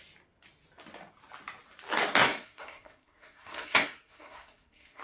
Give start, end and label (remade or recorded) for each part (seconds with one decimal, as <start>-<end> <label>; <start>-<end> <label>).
0.0-2.2 recorded; 2.2-5.0 remade

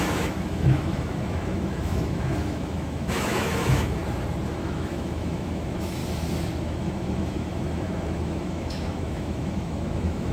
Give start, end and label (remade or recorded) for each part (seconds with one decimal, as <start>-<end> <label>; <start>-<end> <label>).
0.0-4.0 remade; 4.0-4.5 recorded; 4.5-6.0 remade; 6.0-6.6 recorded; 6.6-10.3 remade

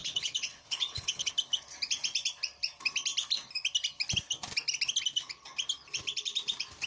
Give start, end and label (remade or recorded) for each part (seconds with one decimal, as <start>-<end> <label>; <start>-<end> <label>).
0.0-1.3 remade; 1.3-6.9 recorded

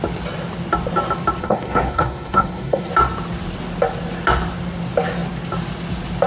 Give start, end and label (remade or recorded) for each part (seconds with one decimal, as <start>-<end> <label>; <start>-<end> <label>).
0.0-1.4 recorded; 1.4-2.9 remade; 2.9-6.3 recorded

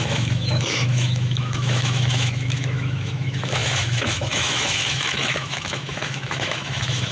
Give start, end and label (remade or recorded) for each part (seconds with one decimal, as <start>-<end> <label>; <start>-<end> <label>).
0.0-7.1 remade

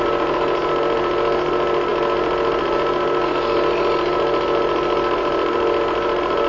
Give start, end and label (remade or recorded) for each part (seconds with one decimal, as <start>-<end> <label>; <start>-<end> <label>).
0.0-6.5 recorded